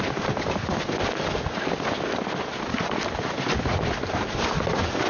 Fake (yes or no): no